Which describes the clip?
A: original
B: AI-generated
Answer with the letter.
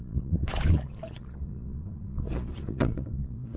B